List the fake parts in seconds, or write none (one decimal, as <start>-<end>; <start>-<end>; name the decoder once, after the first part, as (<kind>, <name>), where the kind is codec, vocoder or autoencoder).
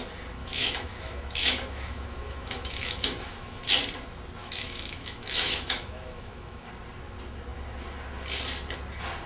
0.4-3.7 (autoencoder, DAC-VAE); 4.4-6.7